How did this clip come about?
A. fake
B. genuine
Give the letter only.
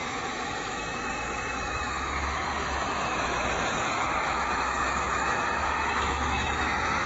A